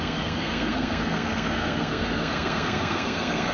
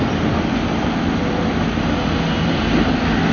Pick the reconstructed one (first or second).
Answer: first